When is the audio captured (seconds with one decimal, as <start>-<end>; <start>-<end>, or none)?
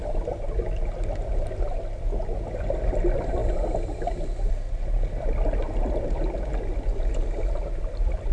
0.0-8.3